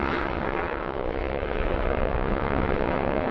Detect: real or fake fake